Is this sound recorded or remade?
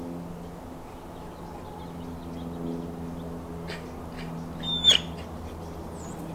recorded